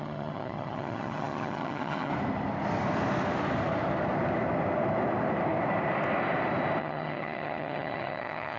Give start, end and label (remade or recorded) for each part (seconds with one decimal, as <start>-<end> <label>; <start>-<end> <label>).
0.0-2.1 remade; 2.1-6.8 recorded; 6.8-8.6 remade